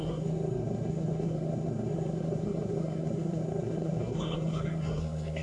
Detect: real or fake fake